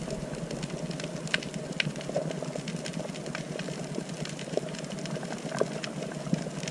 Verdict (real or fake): real